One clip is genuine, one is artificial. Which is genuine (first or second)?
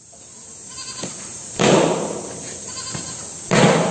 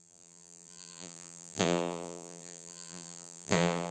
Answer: first